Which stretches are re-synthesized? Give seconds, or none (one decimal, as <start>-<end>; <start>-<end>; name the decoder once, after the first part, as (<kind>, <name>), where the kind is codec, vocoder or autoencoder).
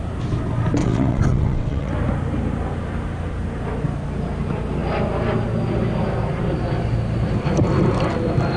0.8-1.9 (vocoder, WaveNeXt)